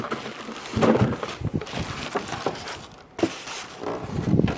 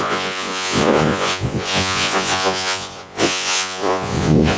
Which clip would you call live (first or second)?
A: first